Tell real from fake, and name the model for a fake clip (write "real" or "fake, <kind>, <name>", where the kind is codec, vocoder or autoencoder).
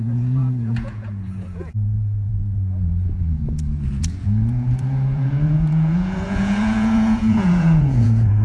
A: fake, vocoder, Vocos